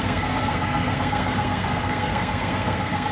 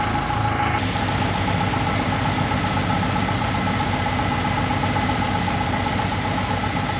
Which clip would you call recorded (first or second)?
second